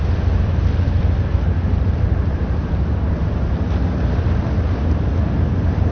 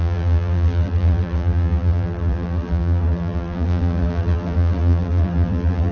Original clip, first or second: first